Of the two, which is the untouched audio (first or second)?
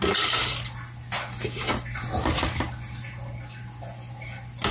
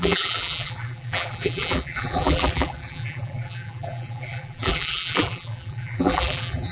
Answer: first